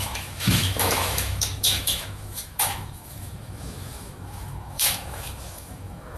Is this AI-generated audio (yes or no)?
yes